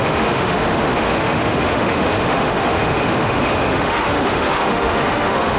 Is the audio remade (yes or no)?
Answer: yes